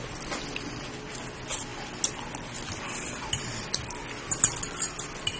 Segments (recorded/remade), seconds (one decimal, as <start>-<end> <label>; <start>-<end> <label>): 0.0-5.4 recorded